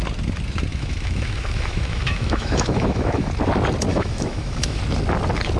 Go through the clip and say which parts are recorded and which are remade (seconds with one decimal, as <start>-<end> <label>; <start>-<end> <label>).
0.0-0.7 recorded; 0.7-3.3 remade; 3.3-3.9 recorded; 3.9-4.8 remade; 4.8-5.6 recorded